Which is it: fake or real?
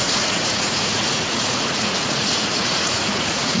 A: fake